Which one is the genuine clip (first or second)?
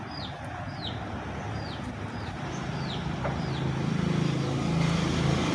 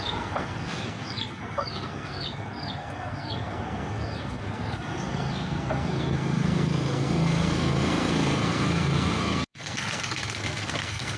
first